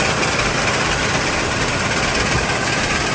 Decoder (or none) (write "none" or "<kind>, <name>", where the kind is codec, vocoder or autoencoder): vocoder, BigVGAN v2